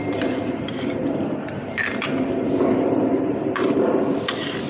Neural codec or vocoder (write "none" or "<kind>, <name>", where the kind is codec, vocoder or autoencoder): none